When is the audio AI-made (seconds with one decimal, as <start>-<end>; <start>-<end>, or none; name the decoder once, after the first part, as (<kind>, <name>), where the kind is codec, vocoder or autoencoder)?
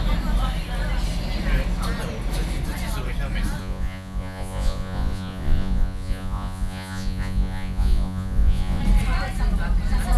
3.6-8.8 (vocoder, Vocos)